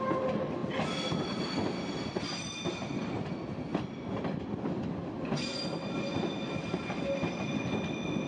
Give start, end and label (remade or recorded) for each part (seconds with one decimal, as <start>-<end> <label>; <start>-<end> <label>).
0.0-8.3 recorded